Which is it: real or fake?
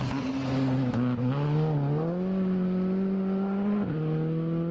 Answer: real